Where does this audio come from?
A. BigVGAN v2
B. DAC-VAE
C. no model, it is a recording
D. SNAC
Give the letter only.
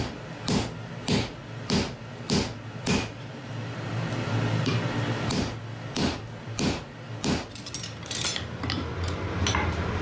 C